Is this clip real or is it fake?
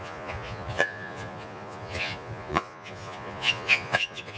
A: fake